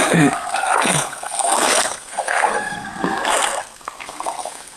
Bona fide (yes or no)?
no